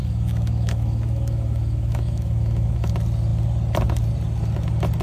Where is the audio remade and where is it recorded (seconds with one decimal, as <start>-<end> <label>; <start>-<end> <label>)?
0.0-2.9 remade; 2.9-5.0 recorded